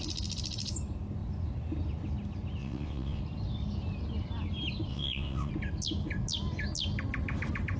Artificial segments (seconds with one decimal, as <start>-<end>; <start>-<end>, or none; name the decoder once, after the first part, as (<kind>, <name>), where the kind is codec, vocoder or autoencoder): 2.6-3.2 (vocoder, WaveNeXt); 4.9-5.5